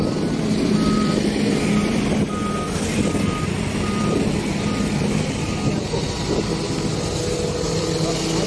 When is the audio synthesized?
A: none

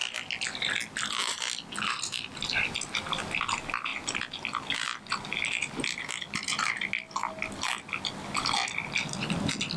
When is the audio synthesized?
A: none

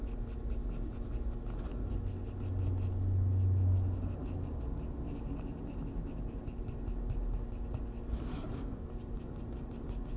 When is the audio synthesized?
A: 8.3-8.9

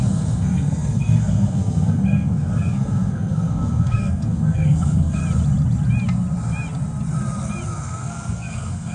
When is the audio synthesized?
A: 0.0-5.2; 7.8-8.9

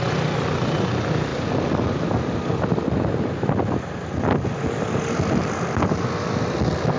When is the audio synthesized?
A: none